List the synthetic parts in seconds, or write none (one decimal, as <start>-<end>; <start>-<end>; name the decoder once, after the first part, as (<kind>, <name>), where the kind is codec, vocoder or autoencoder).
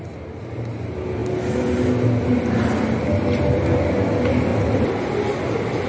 none